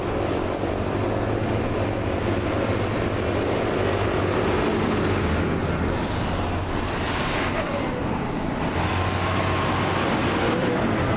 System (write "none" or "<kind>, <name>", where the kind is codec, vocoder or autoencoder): none